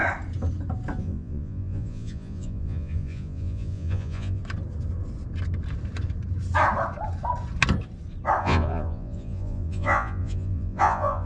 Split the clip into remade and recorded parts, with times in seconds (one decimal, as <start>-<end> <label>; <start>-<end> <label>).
0.0-1.0 recorded; 1.0-4.4 remade; 4.4-8.4 recorded; 8.4-11.3 remade